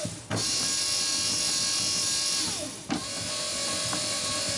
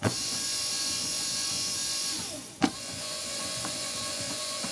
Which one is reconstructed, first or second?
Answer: second